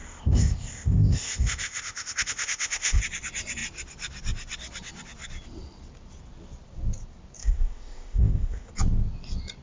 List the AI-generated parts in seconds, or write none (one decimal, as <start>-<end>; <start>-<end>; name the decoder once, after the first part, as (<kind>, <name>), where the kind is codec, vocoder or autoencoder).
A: 0.0-3.0 (codec, ZipCodec); 7.4-8.7